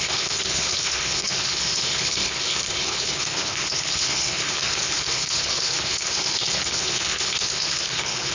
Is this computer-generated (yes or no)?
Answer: yes